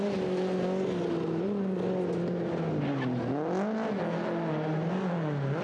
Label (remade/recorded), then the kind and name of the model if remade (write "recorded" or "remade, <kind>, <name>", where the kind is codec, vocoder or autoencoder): recorded